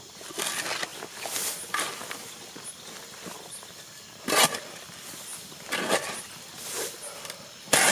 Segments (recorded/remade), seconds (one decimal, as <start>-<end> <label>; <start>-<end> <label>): 0.0-7.9 recorded